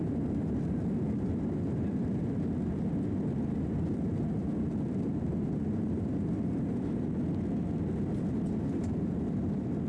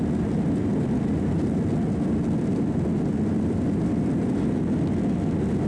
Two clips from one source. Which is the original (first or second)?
second